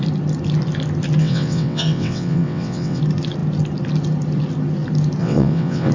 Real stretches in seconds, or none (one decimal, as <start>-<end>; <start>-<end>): 0.0-1.2; 3.0-5.2